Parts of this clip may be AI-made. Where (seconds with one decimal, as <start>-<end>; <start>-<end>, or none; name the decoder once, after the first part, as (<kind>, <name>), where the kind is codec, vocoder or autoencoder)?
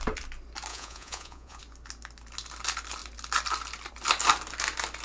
0.7-1.6 (vocoder, Vocos)